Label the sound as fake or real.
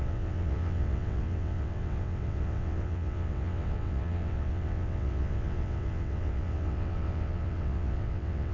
fake